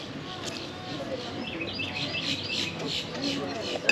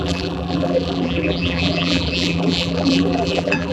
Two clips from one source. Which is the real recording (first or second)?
first